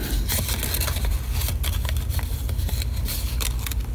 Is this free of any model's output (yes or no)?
yes